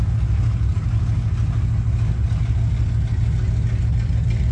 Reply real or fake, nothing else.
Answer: real